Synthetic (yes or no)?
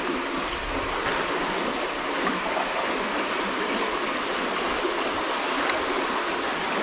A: no